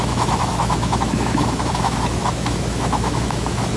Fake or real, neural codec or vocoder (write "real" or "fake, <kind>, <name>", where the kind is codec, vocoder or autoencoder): fake, autoencoder, DAC-VAE